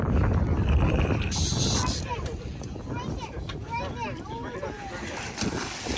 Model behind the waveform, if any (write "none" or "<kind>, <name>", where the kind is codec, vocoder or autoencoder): vocoder, BigVGAN v2